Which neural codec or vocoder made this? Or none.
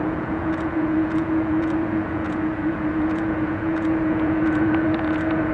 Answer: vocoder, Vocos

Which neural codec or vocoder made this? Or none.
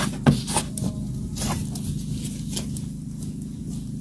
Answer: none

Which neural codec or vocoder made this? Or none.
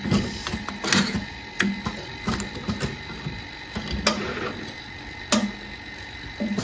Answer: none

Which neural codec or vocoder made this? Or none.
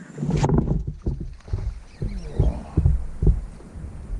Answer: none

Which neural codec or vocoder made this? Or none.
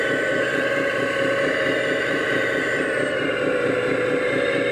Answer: vocoder, BigVGAN v2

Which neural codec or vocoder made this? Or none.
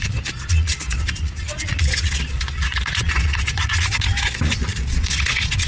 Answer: vocoder, Vocos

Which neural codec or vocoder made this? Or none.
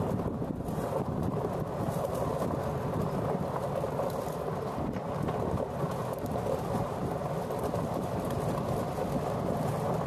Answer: none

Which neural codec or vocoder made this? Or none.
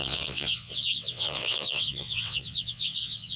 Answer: vocoder, WaveNeXt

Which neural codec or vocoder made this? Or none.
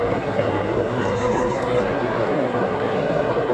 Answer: codec, SNAC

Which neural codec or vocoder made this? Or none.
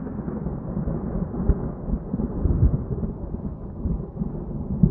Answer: none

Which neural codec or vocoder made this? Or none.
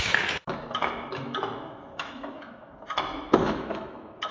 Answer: autoencoder, DAC-VAE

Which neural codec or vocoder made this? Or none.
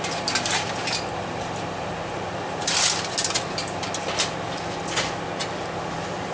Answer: none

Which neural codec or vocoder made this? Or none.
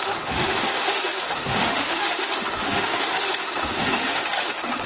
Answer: autoencoder, DAC-VAE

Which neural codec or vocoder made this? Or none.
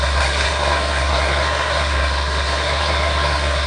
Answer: codec, SNAC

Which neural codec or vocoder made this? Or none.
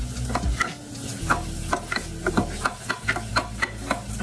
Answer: none